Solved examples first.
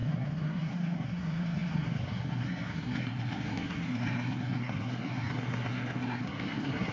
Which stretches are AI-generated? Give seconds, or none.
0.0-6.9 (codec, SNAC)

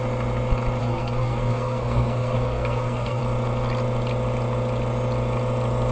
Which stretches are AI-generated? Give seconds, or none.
0.8-3.2 (codec, SNAC)

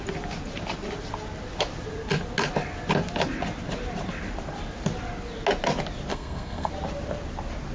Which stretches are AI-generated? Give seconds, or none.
6.1-6.7 (codec, SNAC)

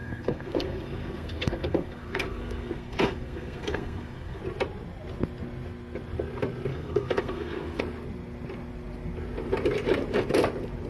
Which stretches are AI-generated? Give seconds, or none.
0.0-4.4 (codec, SNAC); 6.7-7.8

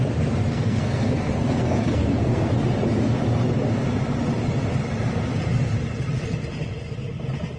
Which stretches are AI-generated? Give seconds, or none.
0.4-2.5 (codec, SNAC)